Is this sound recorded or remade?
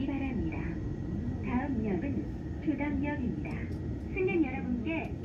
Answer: recorded